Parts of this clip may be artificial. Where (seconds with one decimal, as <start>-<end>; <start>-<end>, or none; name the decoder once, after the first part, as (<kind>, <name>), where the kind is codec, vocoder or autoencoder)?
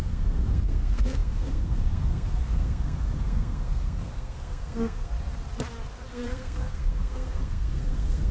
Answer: 0.0-5.1 (codec, SNAC); 6.1-8.3